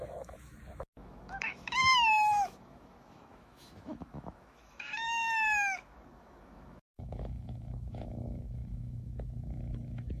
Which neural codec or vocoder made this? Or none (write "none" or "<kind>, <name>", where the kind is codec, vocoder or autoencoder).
autoencoder, DAC-VAE